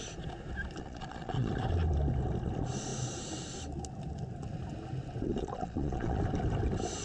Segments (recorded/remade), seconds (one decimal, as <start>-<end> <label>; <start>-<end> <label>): 0.0-0.8 recorded; 0.8-1.6 remade; 1.6-5.3 recorded; 5.3-6.2 remade; 6.2-7.0 recorded

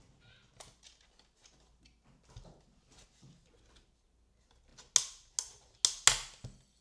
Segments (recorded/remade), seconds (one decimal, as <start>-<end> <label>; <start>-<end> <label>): 0.0-6.8 recorded

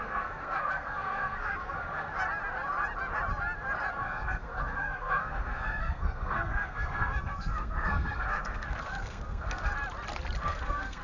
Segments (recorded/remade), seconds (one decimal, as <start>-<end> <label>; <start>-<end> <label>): 0.0-2.1 remade; 2.1-3.9 recorded; 3.9-9.7 remade; 9.7-10.4 recorded; 10.4-11.0 remade

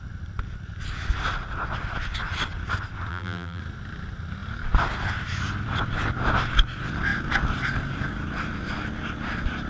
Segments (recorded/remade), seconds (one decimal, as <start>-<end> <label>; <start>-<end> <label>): 0.0-3.1 recorded; 3.1-3.6 remade; 3.6-9.7 recorded

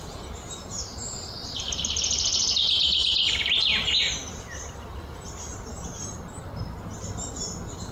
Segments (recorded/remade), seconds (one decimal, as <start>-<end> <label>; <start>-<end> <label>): 0.0-2.4 remade; 2.4-3.4 recorded; 3.4-7.9 remade

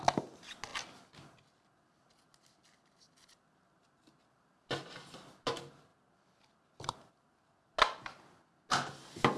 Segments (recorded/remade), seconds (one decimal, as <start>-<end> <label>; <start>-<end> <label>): 0.0-9.4 recorded

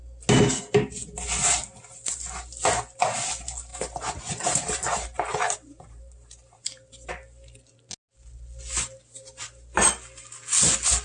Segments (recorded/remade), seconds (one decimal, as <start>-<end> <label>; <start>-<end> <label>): 0.0-3.7 recorded; 3.7-7.1 remade; 7.1-11.0 recorded